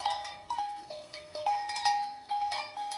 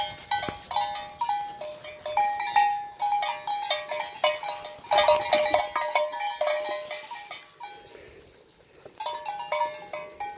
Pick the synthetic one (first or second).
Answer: first